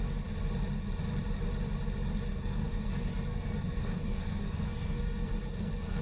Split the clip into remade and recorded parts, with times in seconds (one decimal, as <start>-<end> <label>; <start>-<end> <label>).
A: 0.0-2.3 recorded; 2.3-2.9 remade; 2.9-3.3 recorded; 3.3-6.0 remade